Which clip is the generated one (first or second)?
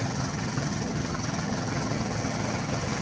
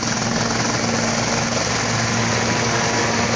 first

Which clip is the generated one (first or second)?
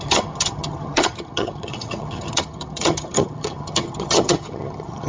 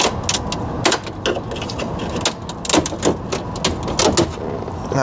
first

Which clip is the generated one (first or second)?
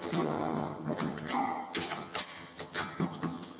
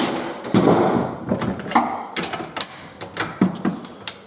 first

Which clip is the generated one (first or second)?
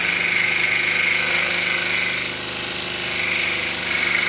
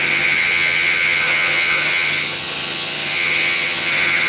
second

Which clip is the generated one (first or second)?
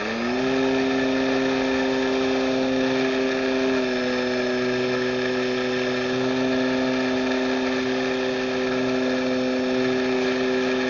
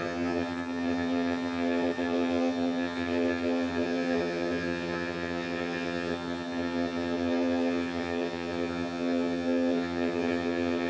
second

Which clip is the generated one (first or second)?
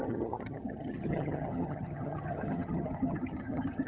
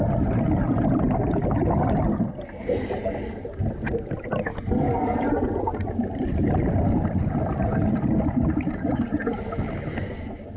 first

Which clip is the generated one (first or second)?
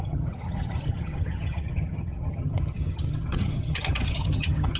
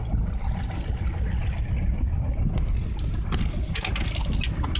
first